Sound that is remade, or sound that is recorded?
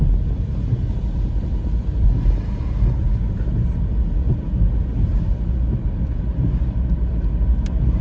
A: recorded